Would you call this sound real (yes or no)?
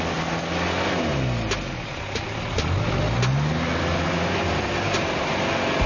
yes